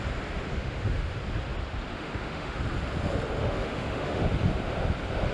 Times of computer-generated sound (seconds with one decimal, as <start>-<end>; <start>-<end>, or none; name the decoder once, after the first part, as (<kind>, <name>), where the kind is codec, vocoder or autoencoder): 0.5-1.2 (autoencoder, DAC-VAE); 1.9-2.6; 3.4-4.2